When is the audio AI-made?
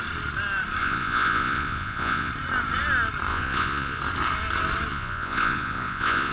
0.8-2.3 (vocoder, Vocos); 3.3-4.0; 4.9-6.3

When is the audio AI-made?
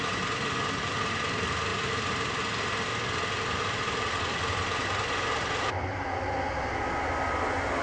1.7-2.4 (vocoder, BigVGAN v2); 2.9-6.1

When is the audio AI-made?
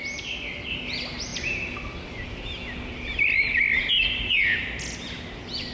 none